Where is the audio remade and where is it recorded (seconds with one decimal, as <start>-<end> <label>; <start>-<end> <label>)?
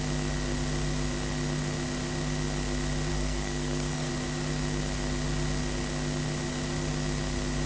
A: 0.0-3.1 recorded; 3.1-4.1 remade; 4.1-7.7 recorded